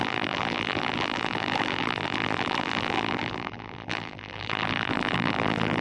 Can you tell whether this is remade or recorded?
remade